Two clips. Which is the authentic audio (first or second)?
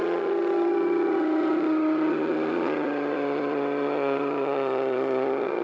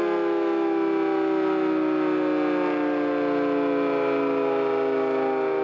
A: second